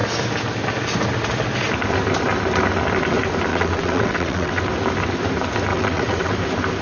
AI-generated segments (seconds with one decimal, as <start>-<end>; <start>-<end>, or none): 3.5-4.6; 5.7-6.3